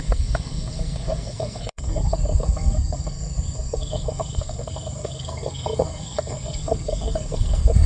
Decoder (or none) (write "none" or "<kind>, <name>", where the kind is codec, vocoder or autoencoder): codec, SNAC